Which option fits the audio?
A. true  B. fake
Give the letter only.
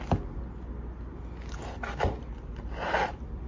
A